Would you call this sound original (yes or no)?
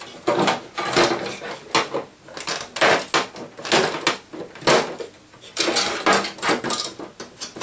yes